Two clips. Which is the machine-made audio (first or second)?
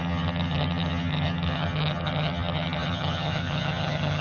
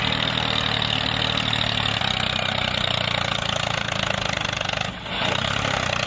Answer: first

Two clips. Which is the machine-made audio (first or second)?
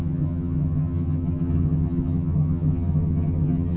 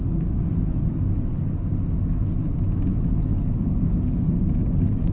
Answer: first